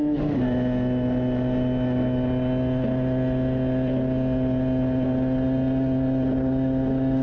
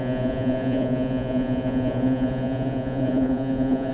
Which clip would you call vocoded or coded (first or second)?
second